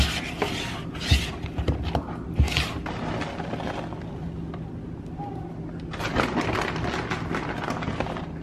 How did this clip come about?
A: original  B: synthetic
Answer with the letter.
A